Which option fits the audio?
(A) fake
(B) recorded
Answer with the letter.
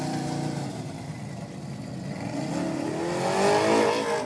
B